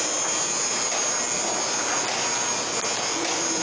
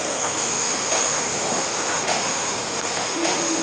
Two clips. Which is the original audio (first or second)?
first